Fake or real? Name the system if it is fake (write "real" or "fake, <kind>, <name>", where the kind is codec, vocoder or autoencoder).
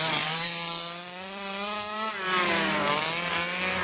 fake, vocoder, BigVGAN v2